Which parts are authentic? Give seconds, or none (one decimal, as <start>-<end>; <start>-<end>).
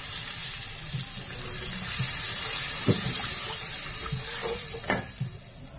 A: 0.4-1.7